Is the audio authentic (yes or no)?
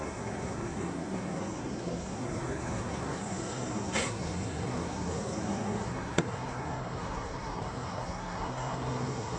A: no